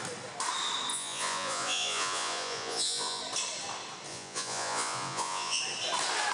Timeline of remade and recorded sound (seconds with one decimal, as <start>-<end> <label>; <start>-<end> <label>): 0.0-0.9 recorded; 0.9-3.2 remade; 3.2-4.1 recorded; 4.1-5.6 remade; 5.6-6.3 recorded